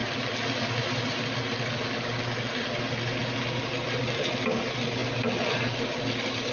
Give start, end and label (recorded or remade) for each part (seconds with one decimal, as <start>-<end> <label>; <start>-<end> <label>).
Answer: 0.0-6.5 recorded